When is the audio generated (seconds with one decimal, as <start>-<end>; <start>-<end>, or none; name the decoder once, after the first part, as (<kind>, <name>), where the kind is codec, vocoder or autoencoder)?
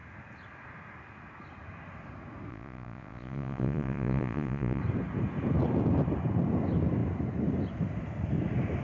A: 2.5-4.8 (vocoder, Vocos)